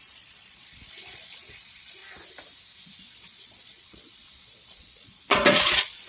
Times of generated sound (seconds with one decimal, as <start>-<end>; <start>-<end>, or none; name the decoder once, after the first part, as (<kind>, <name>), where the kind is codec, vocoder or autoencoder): 0.0-2.0 (vocoder, Vocos); 3.0-6.1